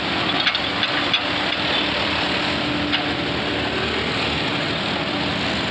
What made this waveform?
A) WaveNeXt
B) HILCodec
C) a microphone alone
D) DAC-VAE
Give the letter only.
C